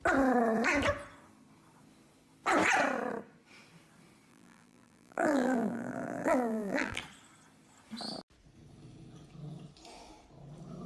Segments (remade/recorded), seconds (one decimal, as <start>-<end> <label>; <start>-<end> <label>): 0.0-4.3 recorded; 4.3-7.0 remade; 7.0-10.9 recorded

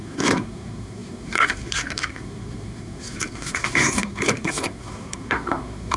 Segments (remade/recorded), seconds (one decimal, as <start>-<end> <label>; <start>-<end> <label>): 0.0-6.0 remade

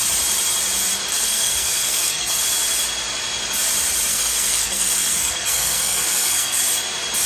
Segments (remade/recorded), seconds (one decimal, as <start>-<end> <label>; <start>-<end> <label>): 0.0-1.1 recorded; 1.1-2.4 remade; 2.4-4.1 recorded; 4.1-6.6 remade; 6.6-7.3 recorded

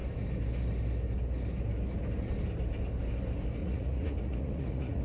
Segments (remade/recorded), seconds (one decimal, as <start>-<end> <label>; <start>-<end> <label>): 0.0-3.6 recorded; 3.6-5.0 remade

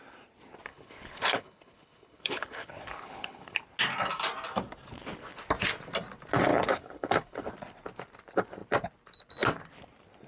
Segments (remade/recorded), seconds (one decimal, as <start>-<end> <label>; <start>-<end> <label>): 0.0-0.7 recorded; 0.7-3.6 remade; 3.6-6.5 recorded; 6.5-7.5 remade; 7.5-10.3 recorded

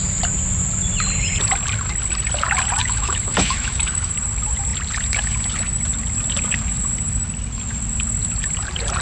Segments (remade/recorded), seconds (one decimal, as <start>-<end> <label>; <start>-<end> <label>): 0.0-2.8 recorded; 2.8-4.1 remade; 4.1-9.0 recorded